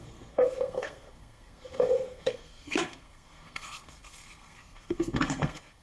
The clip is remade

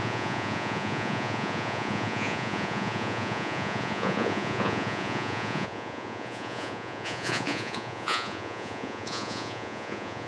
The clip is remade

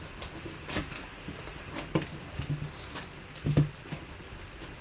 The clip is recorded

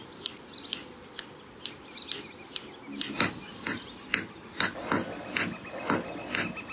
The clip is recorded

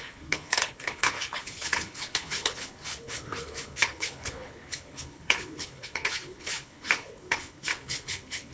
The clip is remade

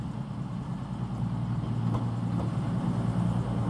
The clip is recorded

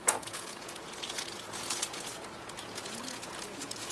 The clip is remade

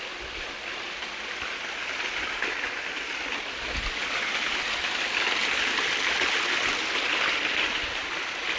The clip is recorded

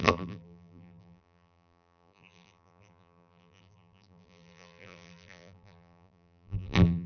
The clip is remade